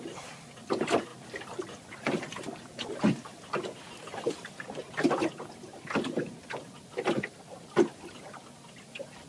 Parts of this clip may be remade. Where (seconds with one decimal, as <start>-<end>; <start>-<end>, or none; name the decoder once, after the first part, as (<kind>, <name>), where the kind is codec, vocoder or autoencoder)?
none